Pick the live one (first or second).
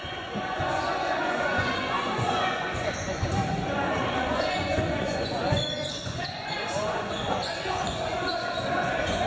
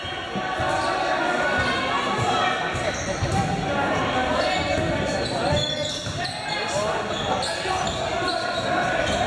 second